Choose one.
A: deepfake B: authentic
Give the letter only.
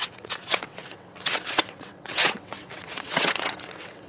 A